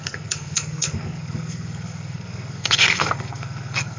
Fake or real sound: fake